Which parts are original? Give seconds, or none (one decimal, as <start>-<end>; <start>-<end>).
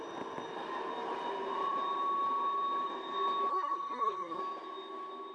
0.0-3.5; 4.4-5.3